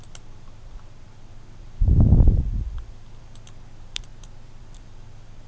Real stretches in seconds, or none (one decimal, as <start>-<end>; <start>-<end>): none